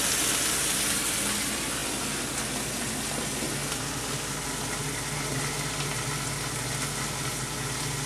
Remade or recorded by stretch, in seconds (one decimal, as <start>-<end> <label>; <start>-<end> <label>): 0.0-8.1 recorded